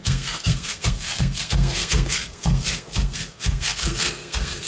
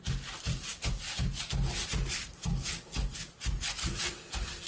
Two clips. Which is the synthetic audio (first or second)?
first